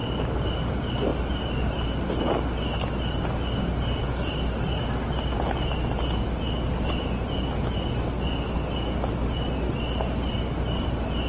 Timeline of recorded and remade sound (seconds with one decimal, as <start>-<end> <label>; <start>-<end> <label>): 0.0-11.3 recorded